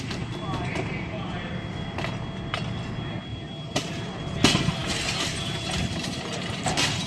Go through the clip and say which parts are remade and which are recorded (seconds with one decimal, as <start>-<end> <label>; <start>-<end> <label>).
0.0-0.7 recorded; 0.7-1.5 remade; 1.5-3.3 recorded; 3.3-4.2 remade; 4.2-7.1 recorded

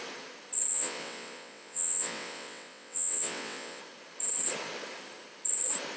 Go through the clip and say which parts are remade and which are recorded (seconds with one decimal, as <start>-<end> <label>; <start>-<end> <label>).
0.0-0.7 recorded; 0.7-3.8 remade; 3.8-6.0 recorded